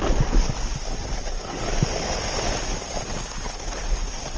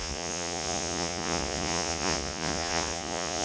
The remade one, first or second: second